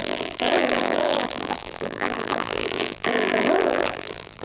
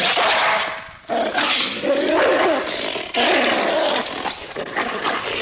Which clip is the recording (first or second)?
second